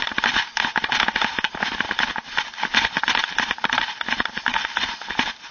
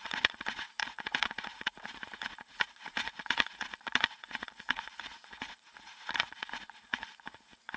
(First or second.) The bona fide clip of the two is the first